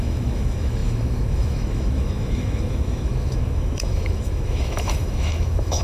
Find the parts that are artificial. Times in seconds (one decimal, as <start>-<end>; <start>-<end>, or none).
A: 0.0-5.8